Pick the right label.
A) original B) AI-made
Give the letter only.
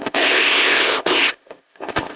B